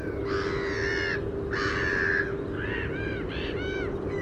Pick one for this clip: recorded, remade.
recorded